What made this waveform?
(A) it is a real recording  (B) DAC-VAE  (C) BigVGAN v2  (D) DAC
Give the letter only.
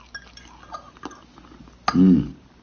A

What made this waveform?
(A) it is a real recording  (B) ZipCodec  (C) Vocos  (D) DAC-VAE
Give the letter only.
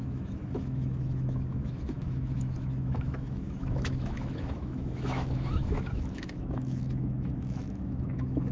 D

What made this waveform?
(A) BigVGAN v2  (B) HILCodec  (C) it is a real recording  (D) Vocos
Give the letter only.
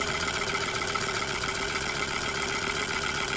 D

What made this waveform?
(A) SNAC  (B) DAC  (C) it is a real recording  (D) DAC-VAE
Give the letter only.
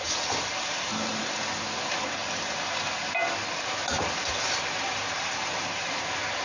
C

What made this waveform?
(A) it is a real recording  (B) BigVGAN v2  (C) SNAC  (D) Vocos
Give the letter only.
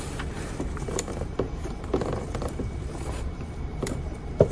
B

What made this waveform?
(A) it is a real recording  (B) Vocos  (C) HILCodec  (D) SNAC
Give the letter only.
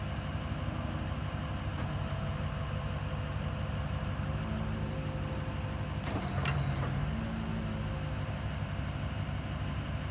A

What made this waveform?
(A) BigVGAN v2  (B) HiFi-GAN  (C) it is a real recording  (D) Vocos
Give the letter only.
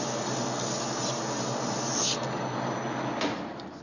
C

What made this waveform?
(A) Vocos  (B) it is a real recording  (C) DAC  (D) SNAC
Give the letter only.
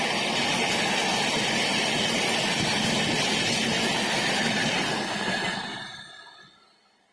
B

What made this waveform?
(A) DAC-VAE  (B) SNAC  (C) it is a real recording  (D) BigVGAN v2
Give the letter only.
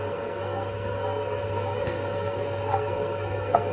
B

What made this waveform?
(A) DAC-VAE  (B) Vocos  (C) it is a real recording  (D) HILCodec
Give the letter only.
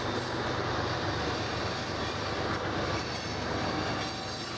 C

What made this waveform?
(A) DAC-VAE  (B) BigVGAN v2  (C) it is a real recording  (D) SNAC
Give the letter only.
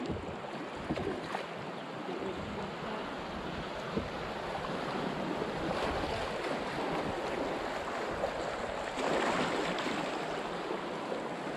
C